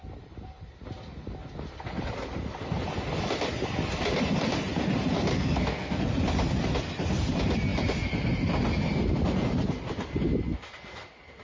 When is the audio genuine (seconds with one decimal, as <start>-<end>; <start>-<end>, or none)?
0.0-5.3; 6.0-11.4